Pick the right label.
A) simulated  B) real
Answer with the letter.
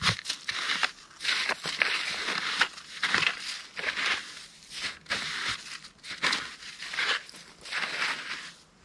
B